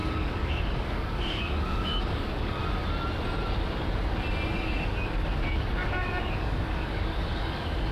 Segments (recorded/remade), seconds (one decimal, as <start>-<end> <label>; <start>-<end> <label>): 0.0-2.6 remade; 2.6-4.5 recorded; 4.5-7.9 remade